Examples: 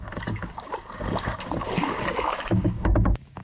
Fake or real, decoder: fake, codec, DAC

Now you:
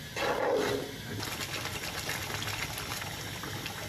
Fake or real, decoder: real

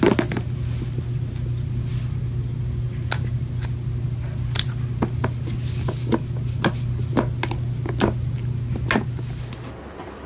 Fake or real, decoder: real